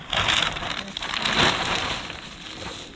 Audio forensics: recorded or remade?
recorded